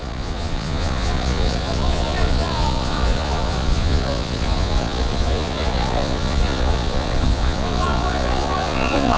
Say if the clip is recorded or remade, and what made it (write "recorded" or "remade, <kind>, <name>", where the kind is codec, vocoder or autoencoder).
remade, vocoder, Vocos